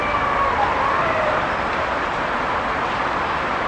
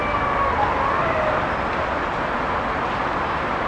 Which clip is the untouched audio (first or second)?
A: second